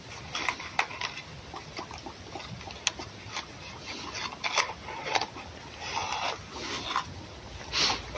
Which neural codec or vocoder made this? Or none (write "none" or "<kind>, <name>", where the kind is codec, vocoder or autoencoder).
none